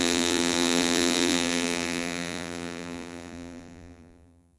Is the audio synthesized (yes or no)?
yes